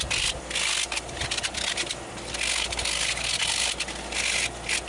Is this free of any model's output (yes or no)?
yes